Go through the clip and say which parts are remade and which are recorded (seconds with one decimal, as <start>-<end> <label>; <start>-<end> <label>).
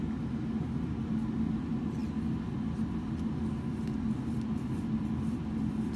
0.0-6.0 recorded